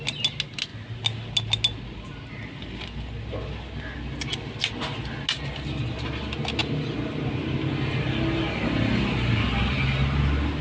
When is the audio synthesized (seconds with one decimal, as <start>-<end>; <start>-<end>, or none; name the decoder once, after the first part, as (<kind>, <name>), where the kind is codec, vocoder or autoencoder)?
none